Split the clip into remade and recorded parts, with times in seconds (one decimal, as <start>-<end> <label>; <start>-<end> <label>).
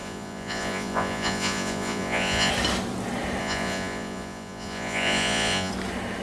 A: 0.0-2.5 remade; 2.5-3.4 recorded; 3.4-5.7 remade; 5.7-6.2 recorded